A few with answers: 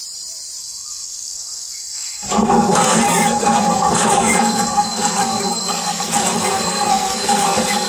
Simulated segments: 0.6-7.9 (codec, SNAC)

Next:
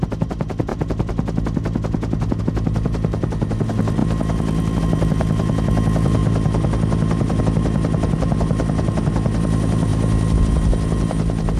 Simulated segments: none

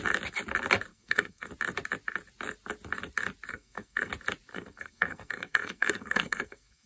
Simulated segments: 0.9-1.5 (codec, SNAC); 3.5-4.1; 4.5-6.9